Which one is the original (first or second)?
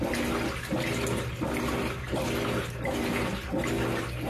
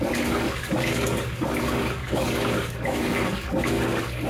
first